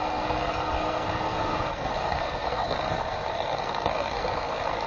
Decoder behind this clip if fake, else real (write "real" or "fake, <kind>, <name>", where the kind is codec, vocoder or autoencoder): fake, codec, SNAC